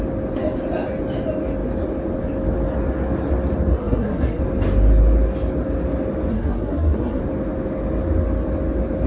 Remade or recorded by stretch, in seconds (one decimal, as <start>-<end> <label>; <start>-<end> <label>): 0.0-3.7 recorded; 3.7-4.4 remade; 4.4-6.3 recorded; 6.3-7.2 remade; 7.2-9.1 recorded